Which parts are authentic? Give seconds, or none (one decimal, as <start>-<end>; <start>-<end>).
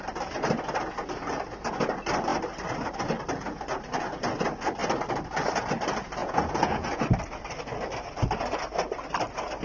0.0-6.2; 7.0-9.6